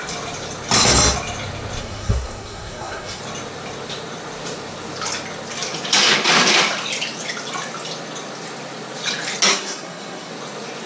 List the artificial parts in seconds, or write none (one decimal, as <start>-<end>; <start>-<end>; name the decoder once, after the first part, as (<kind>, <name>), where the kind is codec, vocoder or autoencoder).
1.8-3.2 (codec, SNAC); 9.5-10.3